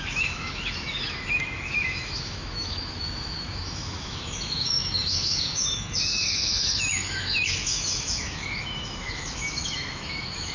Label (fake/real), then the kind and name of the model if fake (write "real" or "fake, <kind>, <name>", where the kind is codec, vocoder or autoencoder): fake, autoencoder, DAC-VAE